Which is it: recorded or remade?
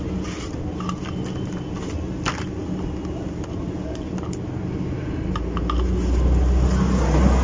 recorded